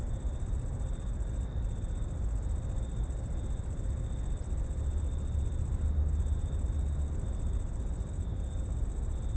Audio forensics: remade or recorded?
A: recorded